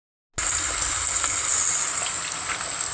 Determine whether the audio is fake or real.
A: real